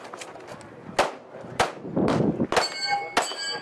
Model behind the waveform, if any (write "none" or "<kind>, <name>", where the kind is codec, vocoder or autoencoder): none